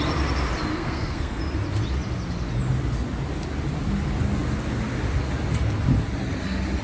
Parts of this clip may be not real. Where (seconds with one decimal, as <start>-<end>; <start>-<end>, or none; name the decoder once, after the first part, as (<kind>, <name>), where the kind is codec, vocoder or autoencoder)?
0.7-1.4 (codec, SNAC)